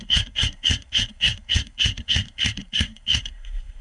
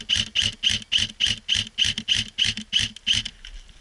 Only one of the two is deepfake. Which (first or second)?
first